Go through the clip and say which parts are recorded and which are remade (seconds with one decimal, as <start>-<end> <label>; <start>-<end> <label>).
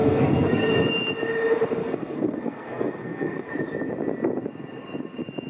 0.0-0.7 remade; 0.7-1.8 recorded; 1.8-3.5 remade; 3.5-5.5 recorded